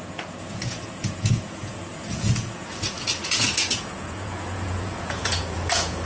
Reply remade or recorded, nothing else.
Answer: remade